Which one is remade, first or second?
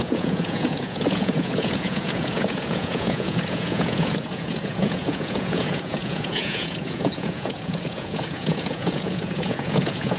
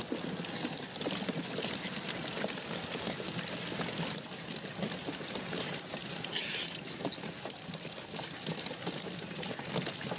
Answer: first